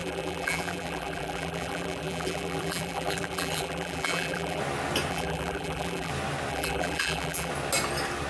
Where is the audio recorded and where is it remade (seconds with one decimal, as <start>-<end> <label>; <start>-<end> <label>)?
0.0-4.6 remade; 4.6-5.1 recorded; 5.1-6.1 remade; 6.1-6.5 recorded; 6.5-7.5 remade; 7.5-8.3 recorded